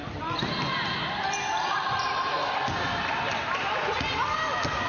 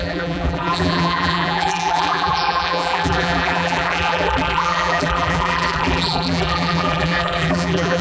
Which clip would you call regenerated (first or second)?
second